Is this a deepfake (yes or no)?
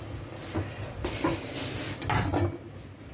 no